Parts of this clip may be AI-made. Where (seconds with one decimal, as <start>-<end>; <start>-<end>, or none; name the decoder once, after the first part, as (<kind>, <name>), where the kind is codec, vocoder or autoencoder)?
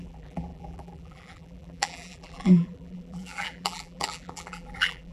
0.0-5.1 (vocoder, BigVGAN v2)